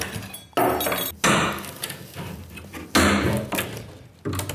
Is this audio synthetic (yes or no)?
no